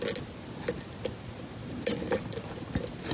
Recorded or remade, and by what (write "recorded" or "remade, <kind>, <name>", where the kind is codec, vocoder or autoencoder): recorded